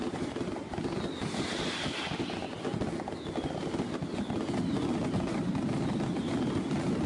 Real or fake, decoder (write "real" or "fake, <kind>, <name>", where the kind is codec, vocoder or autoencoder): real